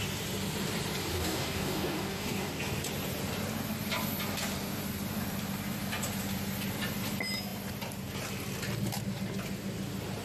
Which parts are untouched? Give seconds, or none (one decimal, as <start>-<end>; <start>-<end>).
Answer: 0.0-1.1; 2.6-10.2